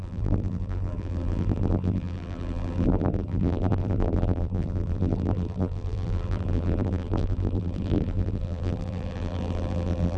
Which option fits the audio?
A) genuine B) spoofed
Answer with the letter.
B